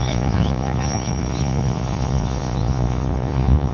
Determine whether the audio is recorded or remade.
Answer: remade